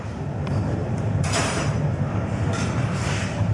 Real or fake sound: fake